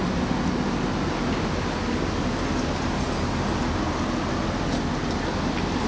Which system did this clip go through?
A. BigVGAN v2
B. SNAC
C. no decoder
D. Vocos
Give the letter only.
C